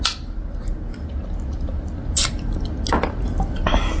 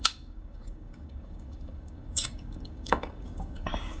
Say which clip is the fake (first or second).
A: second